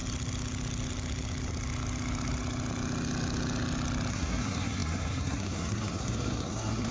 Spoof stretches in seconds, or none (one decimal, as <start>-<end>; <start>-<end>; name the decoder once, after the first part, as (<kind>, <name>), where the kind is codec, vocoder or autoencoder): 4.1-6.9 (codec, SNAC)